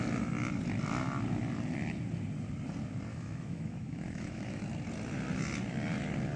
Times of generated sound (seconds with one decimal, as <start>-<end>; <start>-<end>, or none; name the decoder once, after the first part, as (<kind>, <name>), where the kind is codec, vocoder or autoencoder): 3.1-4.6 (autoencoder, DAC-VAE)